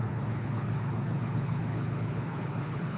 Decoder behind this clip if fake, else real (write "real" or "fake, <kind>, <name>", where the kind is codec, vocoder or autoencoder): fake, codec, HILCodec